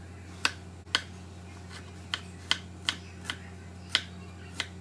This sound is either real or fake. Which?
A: real